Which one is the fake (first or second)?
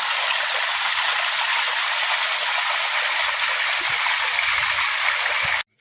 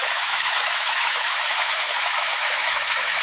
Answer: second